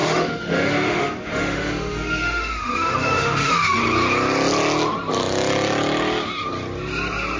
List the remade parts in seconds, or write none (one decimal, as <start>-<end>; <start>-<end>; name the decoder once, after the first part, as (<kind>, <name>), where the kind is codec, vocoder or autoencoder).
0.0-3.8 (autoencoder, DAC-VAE)